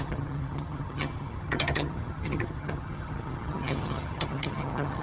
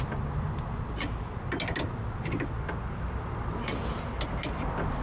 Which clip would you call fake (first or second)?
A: first